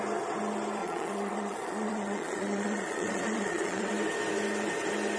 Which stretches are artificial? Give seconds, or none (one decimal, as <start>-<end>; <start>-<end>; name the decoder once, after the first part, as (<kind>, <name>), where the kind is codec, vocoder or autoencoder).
0.8-3.9 (vocoder, Vocos)

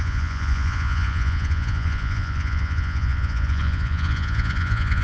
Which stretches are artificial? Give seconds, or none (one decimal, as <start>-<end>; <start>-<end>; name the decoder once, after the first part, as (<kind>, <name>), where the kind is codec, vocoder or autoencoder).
0.0-5.0 (vocoder, Vocos)

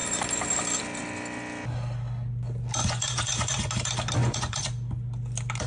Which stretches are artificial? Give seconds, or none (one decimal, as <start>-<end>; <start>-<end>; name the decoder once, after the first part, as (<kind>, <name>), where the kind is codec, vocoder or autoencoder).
2.8-3.7 (vocoder, Vocos); 4.2-4.7

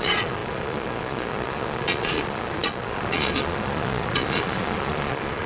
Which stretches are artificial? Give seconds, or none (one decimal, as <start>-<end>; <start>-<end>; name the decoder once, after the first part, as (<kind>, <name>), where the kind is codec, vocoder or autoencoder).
0.0-5.5 (vocoder, Vocos)

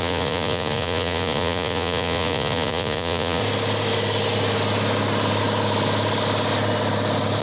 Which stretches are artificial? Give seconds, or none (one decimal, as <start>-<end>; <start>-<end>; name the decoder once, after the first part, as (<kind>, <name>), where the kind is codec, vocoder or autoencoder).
0.0-3.4 (vocoder, Vocos)

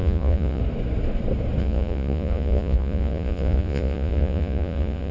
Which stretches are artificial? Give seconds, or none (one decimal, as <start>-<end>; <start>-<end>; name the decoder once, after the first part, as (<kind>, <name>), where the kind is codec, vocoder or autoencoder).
0.0-0.6 (vocoder, Vocos); 1.6-5.1